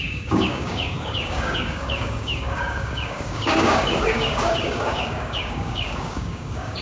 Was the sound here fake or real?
fake